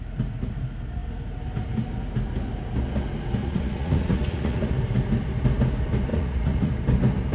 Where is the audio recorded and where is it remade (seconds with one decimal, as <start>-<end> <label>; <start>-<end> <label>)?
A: 0.0-3.4 recorded; 3.4-4.8 remade; 4.8-6.1 recorded; 6.1-6.7 remade; 6.7-7.3 recorded